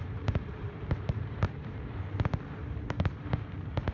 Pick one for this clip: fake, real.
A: fake